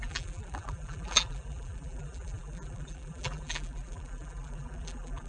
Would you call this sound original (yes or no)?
no